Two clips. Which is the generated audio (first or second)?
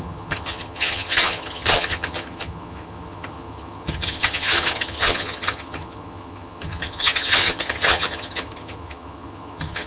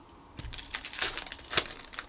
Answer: first